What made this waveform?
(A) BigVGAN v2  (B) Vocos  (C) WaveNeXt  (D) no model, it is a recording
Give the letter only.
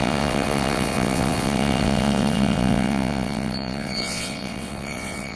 C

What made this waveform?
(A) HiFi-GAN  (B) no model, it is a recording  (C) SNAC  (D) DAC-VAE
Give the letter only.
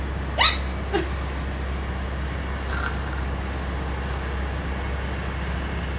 B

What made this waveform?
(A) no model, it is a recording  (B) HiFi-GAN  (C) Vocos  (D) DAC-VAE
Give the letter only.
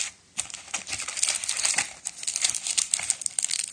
A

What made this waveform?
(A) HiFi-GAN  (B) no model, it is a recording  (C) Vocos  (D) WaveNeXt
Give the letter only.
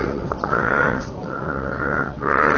D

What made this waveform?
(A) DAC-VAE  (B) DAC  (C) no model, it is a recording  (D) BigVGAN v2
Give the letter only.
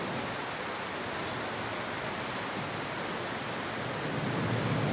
C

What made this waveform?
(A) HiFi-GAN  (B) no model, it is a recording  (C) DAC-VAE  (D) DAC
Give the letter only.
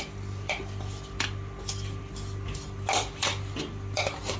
B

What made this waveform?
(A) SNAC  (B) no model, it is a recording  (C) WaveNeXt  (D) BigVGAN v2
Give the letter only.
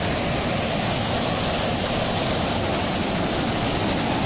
B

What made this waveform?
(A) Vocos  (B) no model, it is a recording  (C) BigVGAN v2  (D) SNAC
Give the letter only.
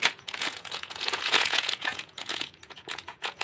A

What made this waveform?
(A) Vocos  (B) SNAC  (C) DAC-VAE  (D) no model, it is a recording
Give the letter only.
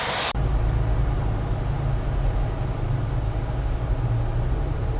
D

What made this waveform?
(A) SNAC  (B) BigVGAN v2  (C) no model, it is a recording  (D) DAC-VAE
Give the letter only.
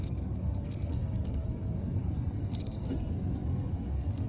A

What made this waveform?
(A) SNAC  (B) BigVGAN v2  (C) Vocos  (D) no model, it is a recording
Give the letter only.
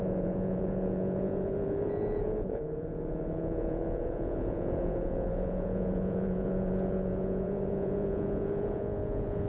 C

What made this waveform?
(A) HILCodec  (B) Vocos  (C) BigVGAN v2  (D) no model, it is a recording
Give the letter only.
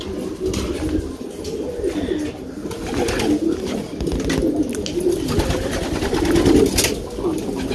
D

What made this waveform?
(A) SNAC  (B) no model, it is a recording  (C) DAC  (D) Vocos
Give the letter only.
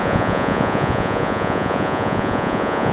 D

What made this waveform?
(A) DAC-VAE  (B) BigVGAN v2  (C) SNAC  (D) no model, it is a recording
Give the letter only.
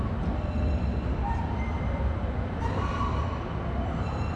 B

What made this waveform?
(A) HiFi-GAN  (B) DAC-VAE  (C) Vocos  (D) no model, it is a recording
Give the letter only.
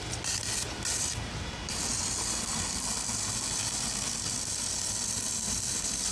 D